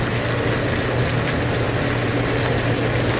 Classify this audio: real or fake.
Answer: real